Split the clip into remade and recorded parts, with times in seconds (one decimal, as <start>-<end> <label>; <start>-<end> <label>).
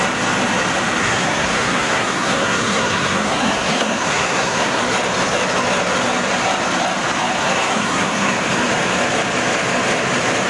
0.0-1.0 recorded; 1.0-4.8 remade; 4.8-7.4 recorded; 7.4-8.4 remade; 8.4-10.5 recorded